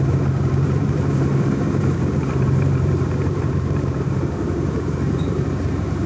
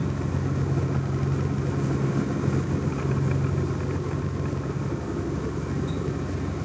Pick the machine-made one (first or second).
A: first